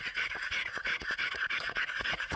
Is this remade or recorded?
remade